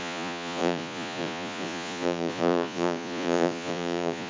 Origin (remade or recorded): remade